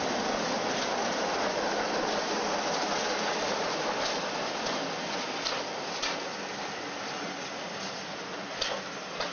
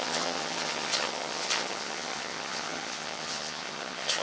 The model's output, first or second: second